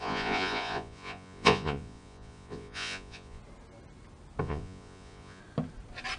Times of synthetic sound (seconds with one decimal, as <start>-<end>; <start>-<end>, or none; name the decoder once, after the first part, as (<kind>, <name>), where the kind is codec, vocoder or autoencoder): 0.0-3.4 (vocoder, Vocos); 4.4-5.4